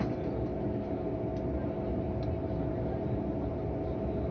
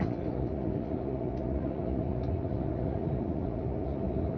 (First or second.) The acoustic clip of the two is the first